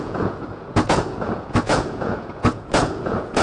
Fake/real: fake